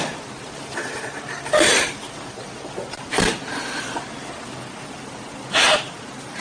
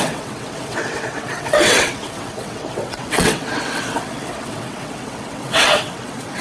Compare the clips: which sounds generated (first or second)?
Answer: second